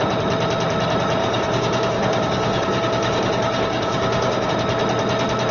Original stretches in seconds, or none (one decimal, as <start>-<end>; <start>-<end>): 0.0-1.2; 4.5-5.5

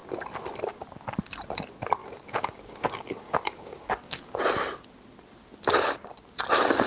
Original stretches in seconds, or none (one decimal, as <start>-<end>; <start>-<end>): 0.0-2.0; 4.4-6.9

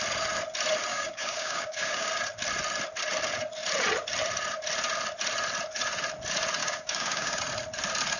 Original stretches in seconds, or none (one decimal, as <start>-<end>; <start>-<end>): 0.0-0.9; 2.1-6.6; 7.4-8.2